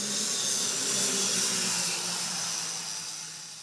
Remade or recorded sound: recorded